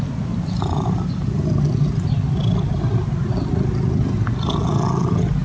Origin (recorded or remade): recorded